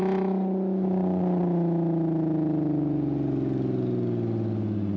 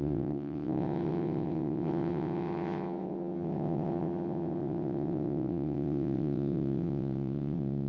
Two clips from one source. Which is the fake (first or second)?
second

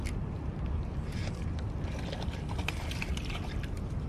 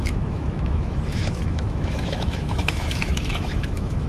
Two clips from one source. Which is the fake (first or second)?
second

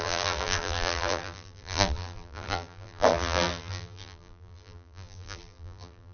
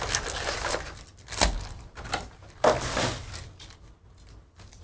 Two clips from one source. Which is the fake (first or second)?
first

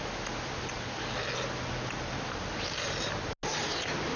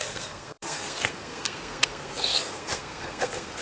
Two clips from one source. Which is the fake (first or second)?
second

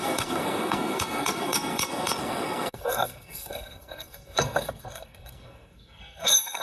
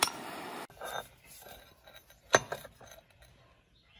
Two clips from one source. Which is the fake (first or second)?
first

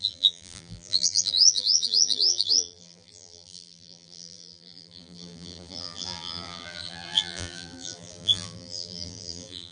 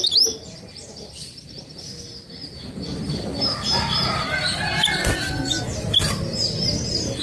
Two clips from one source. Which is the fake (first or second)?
first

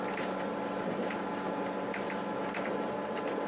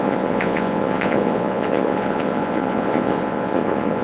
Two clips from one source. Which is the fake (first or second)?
second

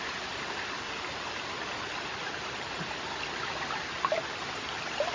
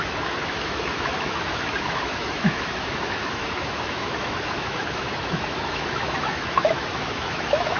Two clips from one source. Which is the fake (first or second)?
second